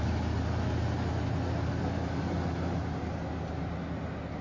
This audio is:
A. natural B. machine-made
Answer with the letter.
A